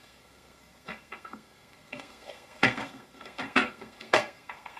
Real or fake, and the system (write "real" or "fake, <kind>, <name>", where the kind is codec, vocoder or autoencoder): fake, codec, SNAC